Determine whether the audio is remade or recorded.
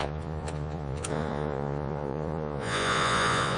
remade